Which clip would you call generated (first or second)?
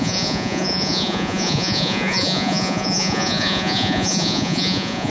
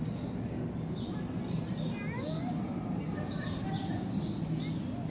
first